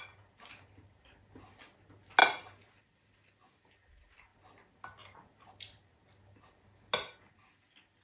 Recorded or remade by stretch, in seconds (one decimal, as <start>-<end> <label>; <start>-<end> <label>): 0.0-8.0 recorded